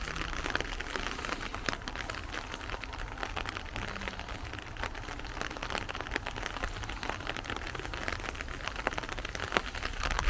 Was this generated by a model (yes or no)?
no